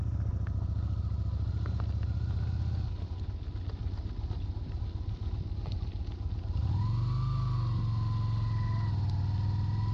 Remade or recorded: recorded